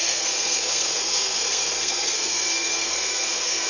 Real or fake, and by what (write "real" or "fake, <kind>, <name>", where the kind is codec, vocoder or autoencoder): fake, codec, SNAC